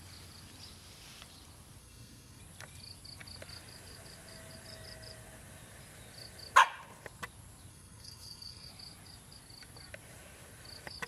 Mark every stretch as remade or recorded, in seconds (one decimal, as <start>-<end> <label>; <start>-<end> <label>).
0.0-1.8 recorded; 1.8-2.4 remade; 2.4-7.7 recorded; 7.7-8.7 remade; 8.7-11.1 recorded